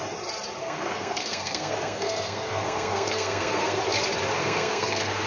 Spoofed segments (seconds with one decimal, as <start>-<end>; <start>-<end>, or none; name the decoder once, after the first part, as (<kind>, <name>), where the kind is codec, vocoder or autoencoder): 0.6-3.8 (codec, SNAC); 4.4-5.3